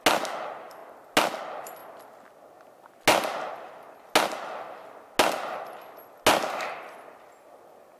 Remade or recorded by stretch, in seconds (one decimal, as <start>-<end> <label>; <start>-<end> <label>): 0.0-8.0 recorded